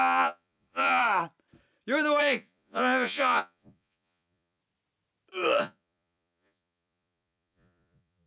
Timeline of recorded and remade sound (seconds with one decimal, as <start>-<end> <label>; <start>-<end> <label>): 0.0-1.0 remade; 1.0-2.2 recorded; 2.2-4.6 remade; 4.6-5.6 recorded; 5.6-8.3 remade